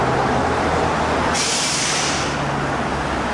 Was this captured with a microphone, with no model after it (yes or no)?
yes